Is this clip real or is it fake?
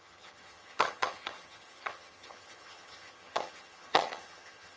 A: fake